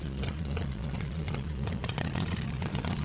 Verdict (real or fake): fake